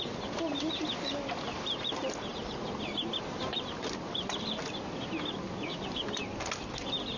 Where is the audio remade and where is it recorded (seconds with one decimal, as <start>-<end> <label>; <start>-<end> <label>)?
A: 0.0-7.2 recorded